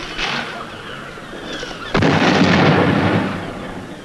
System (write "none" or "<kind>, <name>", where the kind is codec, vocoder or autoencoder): none